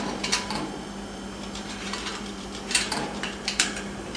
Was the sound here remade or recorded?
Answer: remade